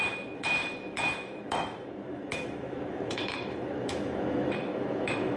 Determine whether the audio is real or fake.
fake